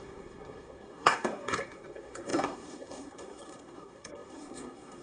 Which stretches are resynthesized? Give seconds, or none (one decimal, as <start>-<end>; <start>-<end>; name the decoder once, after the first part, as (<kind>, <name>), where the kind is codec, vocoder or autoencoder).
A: 0.0-5.0 (codec, SNAC)